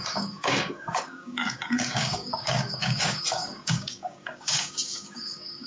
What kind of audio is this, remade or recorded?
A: remade